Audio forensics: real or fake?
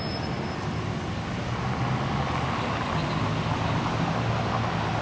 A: real